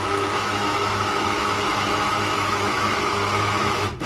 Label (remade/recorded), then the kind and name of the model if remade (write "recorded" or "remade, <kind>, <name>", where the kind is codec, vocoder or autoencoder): remade, autoencoder, DAC-VAE